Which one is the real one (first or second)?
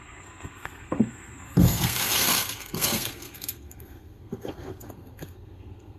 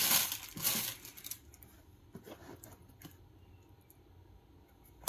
second